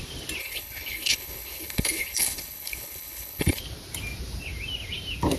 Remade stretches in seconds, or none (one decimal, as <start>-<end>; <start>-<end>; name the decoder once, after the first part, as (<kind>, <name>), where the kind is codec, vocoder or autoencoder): 0.4-3.6 (codec, HILCodec)